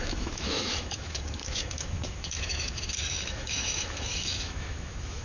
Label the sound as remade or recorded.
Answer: remade